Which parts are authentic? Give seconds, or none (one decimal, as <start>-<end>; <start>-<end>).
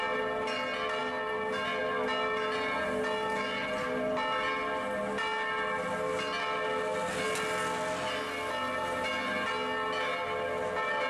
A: 0.0-11.1